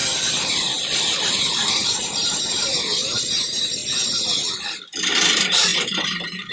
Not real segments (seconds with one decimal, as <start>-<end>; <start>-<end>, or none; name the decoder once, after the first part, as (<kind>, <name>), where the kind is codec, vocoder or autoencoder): 0.0-3.8 (vocoder, BigVGAN v2); 5.1-6.5